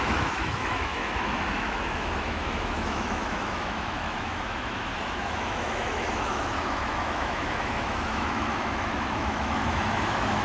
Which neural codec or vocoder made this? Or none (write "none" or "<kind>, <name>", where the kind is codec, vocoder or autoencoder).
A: autoencoder, DAC-VAE